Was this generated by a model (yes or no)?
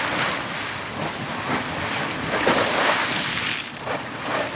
no